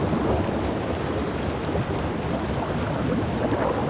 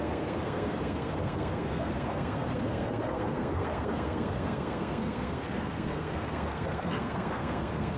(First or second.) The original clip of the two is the first